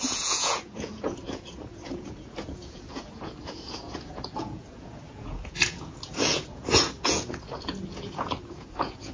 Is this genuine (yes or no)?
no